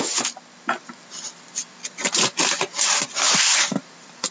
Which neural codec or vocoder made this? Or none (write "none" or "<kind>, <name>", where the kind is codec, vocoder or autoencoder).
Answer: none